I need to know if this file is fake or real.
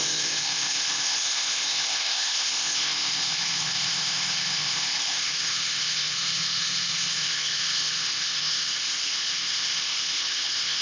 fake